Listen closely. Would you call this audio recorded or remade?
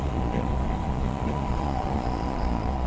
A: remade